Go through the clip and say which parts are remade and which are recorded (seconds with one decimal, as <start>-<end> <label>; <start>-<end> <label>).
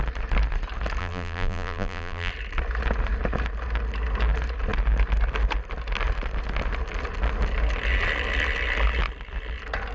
0.0-1.0 recorded; 1.0-2.3 remade; 2.3-9.9 recorded